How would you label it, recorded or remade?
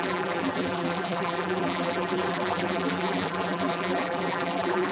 remade